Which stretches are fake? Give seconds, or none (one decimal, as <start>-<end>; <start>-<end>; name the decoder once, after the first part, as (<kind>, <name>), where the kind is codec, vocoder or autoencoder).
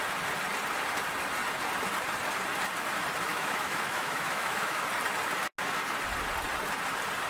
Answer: 3.3-4.8 (autoencoder, DAC-VAE)